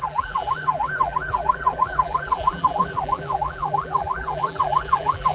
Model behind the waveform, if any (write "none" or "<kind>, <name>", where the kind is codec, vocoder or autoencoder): vocoder, BigVGAN v2